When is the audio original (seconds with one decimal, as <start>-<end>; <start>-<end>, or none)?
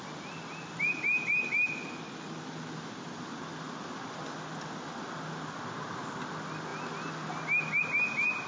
0.0-8.5